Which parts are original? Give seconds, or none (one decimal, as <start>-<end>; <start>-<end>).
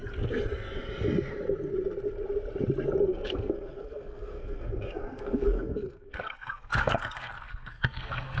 0.0-3.1